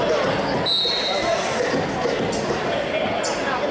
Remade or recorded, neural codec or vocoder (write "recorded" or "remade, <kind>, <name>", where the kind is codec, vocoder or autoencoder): recorded